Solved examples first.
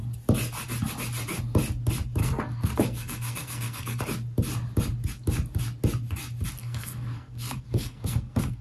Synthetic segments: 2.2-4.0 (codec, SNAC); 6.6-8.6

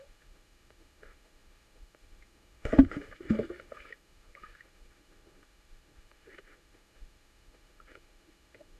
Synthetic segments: 0.0-8.8 (autoencoder, DAC-VAE)

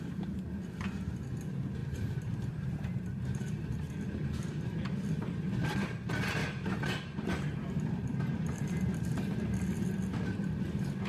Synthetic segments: 1.8-3.9 (vocoder, BigVGAN v2); 6.4-8.7

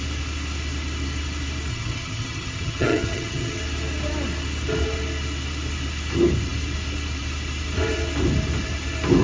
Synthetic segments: 1.7-3.6 (vocoder, HiFi-GAN)

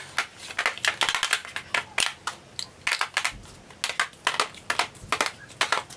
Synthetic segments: none

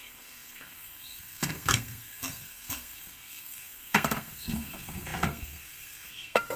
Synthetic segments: 0.0-6.6 (codec, SNAC)

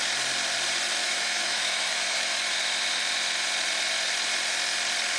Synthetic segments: 1.0-2.4 (autoencoder, DAC-VAE)